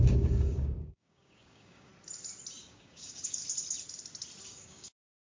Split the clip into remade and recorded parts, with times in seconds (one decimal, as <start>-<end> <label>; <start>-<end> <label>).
0.0-1.9 remade; 1.9-2.6 recorded; 2.6-3.4 remade; 3.4-4.4 recorded; 4.4-5.3 remade